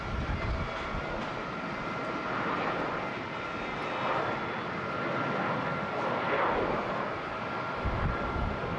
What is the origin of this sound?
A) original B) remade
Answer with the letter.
A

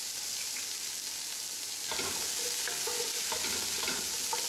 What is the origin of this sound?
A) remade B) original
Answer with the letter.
B